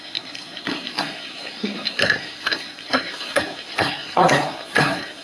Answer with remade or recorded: remade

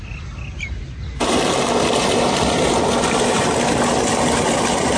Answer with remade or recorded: recorded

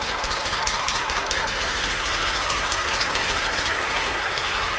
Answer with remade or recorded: remade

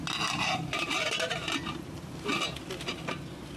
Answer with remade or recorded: recorded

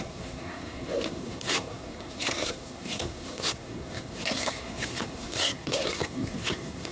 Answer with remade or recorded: remade